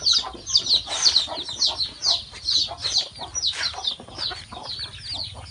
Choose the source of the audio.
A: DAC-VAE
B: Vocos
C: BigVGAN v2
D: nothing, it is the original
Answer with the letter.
D